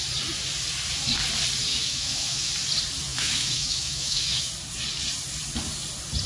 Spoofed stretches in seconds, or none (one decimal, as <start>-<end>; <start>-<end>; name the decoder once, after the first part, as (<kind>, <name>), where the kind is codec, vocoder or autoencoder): 1.7-2.5 (autoencoder, DAC-VAE); 3.1-4.5